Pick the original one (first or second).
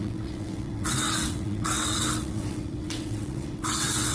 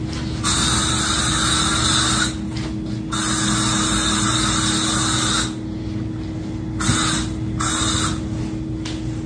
second